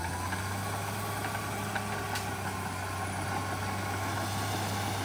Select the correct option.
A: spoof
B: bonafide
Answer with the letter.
B